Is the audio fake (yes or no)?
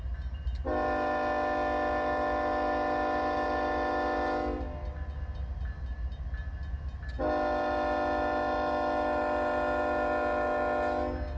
no